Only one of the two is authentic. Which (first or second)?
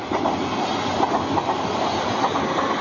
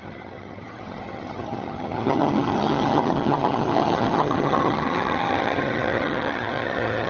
first